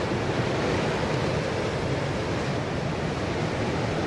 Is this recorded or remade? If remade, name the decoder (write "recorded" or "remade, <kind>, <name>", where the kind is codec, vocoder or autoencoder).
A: recorded